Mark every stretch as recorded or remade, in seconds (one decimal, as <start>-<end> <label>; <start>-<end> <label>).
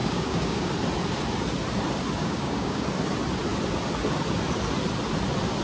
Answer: 0.0-0.7 remade; 0.7-2.2 recorded; 2.2-2.8 remade; 2.8-5.6 recorded